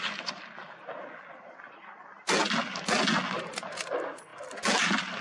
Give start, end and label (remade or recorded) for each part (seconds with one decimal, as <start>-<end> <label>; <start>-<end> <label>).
0.0-5.2 recorded